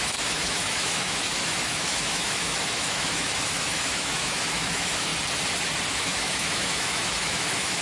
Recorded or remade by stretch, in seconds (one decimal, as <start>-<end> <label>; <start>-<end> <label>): 0.0-5.1 remade; 5.1-5.9 recorded; 5.9-7.8 remade